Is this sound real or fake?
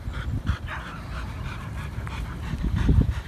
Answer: real